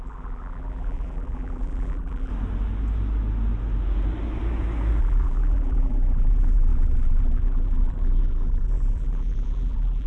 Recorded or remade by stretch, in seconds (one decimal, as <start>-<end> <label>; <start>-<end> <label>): 0.0-2.3 remade; 2.3-5.0 recorded; 5.0-10.1 remade